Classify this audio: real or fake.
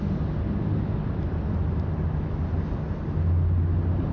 real